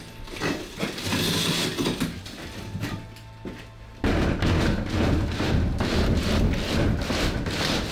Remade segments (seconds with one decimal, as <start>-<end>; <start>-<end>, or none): none